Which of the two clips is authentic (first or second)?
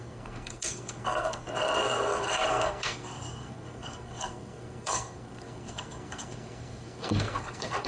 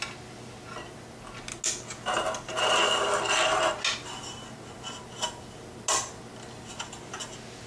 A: second